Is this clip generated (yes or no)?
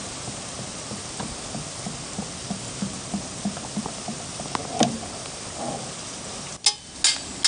no